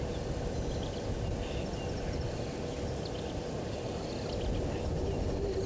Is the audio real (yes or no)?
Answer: yes